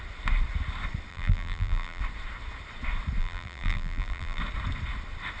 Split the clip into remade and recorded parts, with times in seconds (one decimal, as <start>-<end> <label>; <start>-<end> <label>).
0.0-1.1 recorded; 1.1-2.0 remade; 2.0-3.2 recorded; 3.2-4.4 remade; 4.4-5.4 recorded